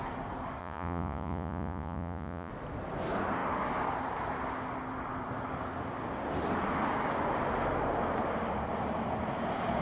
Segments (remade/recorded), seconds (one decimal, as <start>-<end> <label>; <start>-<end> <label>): 0.0-0.6 recorded; 0.6-2.5 remade; 2.5-9.8 recorded